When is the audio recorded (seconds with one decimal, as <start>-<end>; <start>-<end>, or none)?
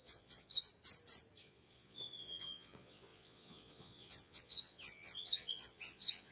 0.7-1.4